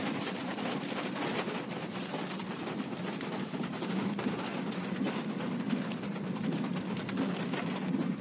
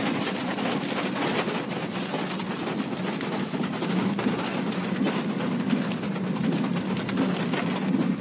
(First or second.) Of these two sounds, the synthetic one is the first